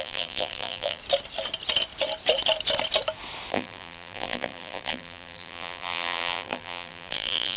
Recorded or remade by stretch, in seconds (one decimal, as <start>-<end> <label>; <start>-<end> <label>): 0.0-1.0 remade; 1.0-3.5 recorded; 3.5-7.6 remade